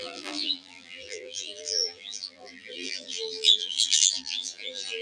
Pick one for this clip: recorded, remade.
remade